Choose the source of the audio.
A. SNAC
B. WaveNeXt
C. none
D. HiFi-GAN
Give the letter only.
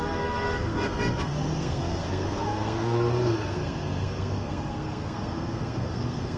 A